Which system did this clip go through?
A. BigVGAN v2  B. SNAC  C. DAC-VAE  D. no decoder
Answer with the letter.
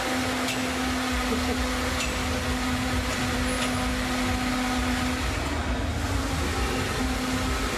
D